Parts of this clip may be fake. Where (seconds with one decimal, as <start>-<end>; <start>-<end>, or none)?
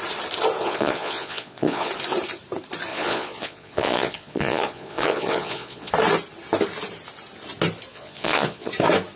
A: 0.6-1.9; 2.9-5.9; 7.9-8.7